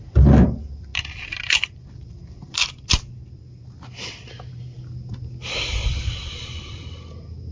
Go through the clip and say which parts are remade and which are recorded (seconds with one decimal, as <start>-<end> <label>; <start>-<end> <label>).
0.0-7.5 recorded